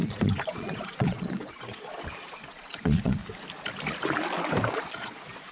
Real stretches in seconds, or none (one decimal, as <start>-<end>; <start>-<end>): 3.2-4.7